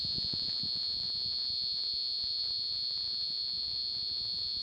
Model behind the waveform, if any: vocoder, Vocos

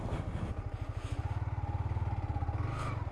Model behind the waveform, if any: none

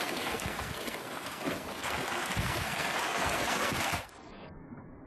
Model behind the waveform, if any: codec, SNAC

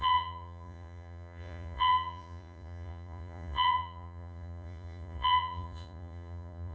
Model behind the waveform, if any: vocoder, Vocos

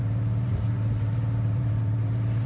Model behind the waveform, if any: vocoder, BigVGAN v2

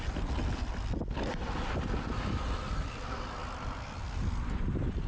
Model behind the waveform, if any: none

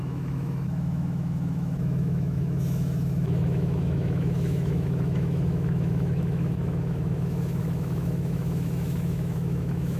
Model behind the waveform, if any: autoencoder, DAC-VAE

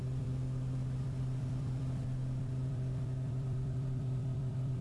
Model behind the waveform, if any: vocoder, BigVGAN v2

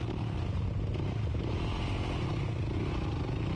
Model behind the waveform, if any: none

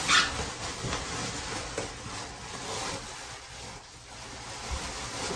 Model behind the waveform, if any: none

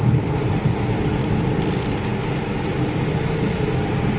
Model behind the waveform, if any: none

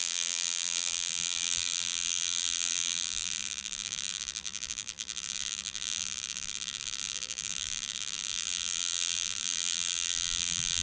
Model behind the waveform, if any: vocoder, BigVGAN v2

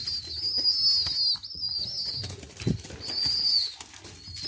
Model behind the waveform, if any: none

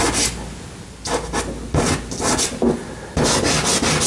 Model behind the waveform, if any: none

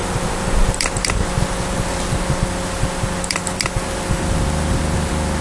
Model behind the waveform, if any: none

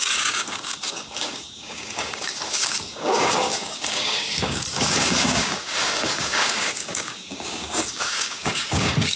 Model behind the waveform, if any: codec, DAC